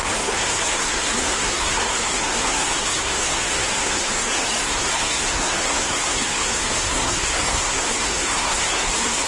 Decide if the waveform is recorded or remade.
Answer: remade